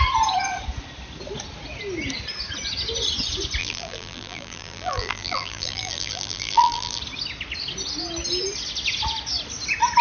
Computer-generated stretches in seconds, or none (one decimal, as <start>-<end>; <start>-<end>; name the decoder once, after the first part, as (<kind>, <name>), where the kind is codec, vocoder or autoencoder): 3.6-7.0 (vocoder, BigVGAN v2)